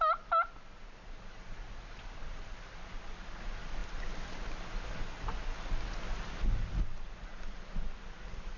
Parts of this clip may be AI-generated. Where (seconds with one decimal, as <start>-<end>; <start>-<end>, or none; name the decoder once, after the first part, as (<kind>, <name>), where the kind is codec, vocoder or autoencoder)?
none